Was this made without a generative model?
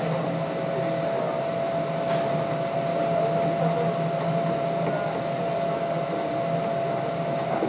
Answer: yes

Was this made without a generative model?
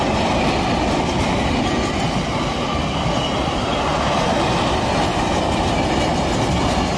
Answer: yes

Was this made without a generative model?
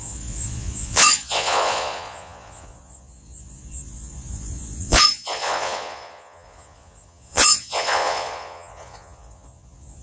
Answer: no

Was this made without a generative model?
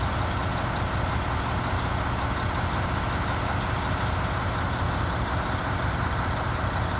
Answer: yes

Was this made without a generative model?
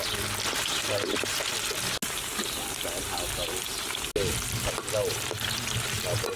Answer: yes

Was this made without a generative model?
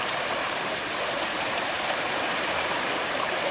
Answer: no